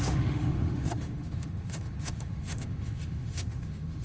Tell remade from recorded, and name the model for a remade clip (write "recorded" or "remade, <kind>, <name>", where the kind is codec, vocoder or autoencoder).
remade, autoencoder, DAC-VAE